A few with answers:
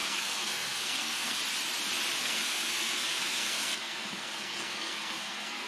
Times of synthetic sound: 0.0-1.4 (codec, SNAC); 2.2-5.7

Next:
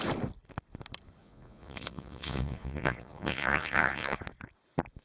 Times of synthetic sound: 1.2-4.2 (vocoder, Vocos)